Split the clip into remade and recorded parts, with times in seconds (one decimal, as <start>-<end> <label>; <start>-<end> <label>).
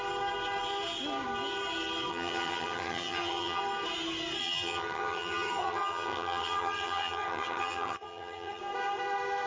0.0-2.1 recorded; 2.1-3.6 remade; 3.6-4.4 recorded; 4.4-8.6 remade; 8.6-9.5 recorded